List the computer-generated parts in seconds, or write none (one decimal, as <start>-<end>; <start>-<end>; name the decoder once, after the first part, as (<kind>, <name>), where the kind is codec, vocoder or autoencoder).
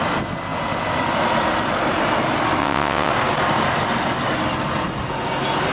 2.6-3.1 (vocoder, WaveNeXt)